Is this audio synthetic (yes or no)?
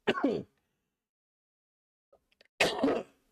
no